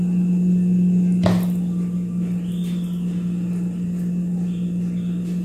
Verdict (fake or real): real